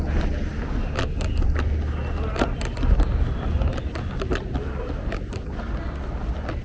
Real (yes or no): yes